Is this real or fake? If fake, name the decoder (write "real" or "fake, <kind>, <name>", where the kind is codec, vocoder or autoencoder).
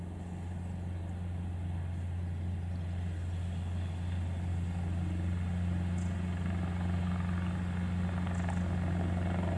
real